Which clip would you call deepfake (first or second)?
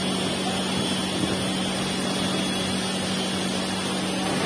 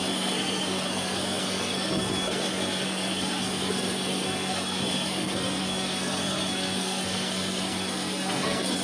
second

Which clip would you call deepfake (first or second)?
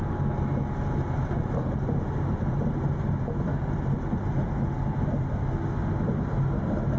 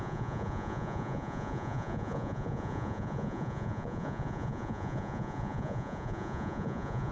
second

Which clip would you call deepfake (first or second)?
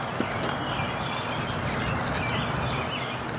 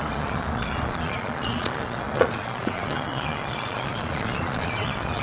second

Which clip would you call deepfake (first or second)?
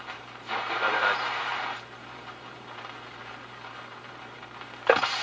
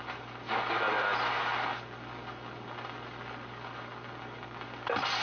first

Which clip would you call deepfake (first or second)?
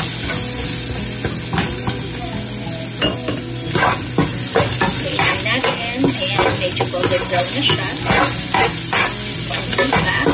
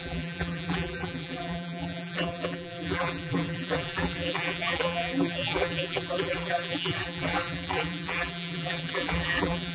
second